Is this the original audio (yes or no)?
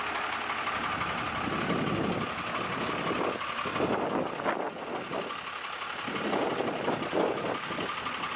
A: yes